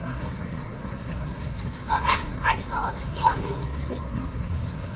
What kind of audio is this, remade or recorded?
remade